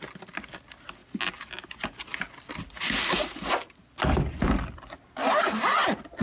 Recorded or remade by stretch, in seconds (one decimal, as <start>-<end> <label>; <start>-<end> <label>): 0.0-6.2 recorded